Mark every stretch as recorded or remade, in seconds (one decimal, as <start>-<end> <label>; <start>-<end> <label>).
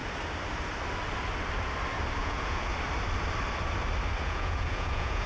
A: 0.0-2.2 recorded; 2.2-2.7 remade; 2.7-4.2 recorded; 4.2-5.3 remade